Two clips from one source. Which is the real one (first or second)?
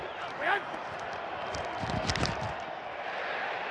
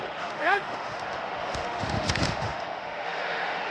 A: first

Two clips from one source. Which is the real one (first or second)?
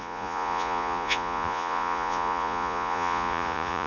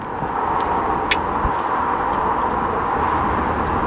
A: second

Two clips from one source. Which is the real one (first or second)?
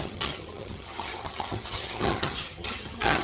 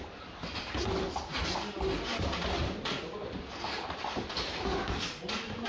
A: second